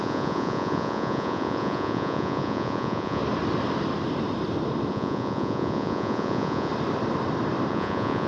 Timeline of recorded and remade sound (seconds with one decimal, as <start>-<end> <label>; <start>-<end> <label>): 0.0-3.2 remade; 3.2-4.9 recorded; 4.9-6.7 remade; 6.7-7.7 recorded; 7.7-8.3 remade